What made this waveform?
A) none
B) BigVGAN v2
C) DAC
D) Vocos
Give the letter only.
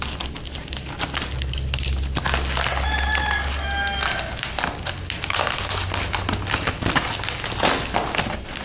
A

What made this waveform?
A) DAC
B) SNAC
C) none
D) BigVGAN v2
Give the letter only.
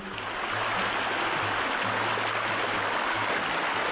C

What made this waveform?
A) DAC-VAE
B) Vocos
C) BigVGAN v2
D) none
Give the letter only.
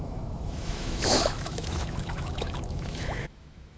A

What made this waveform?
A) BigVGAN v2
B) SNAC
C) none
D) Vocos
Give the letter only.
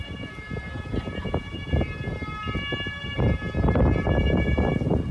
C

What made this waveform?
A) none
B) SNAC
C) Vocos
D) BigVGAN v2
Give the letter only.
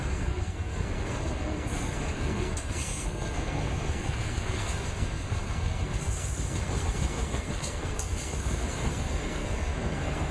B